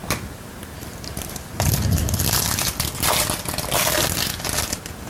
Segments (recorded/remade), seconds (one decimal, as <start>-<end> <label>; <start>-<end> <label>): 0.0-1.8 remade; 1.8-5.1 recorded